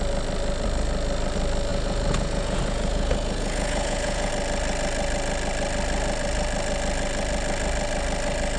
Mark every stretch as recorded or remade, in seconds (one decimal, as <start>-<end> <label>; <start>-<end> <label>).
0.0-1.7 recorded; 1.7-4.3 remade; 4.3-8.6 recorded